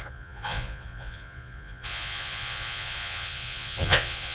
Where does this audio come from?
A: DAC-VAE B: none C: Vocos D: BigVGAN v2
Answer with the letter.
C